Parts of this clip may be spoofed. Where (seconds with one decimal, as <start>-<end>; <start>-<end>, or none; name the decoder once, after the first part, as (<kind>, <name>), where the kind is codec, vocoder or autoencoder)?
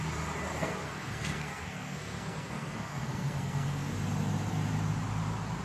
0.5-3.9 (codec, SNAC)